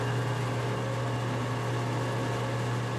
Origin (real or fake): real